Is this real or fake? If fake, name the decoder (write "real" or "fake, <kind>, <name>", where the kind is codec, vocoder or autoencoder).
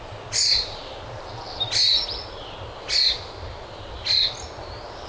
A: real